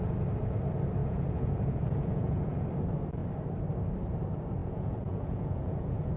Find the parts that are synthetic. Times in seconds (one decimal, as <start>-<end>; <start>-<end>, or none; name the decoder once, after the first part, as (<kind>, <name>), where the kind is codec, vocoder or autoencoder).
1.0-2.7 (vocoder, Vocos); 4.6-6.2